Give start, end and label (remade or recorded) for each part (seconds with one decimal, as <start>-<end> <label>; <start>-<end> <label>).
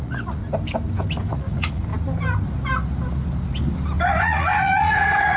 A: 0.0-0.4 remade; 0.4-1.3 recorded; 1.3-1.9 remade; 1.9-4.2 recorded; 4.2-5.4 remade